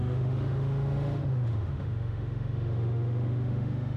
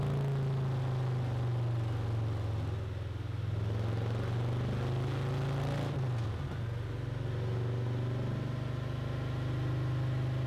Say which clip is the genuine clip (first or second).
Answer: second